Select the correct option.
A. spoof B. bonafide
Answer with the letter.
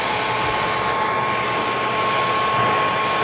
B